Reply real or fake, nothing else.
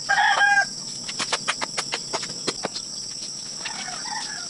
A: real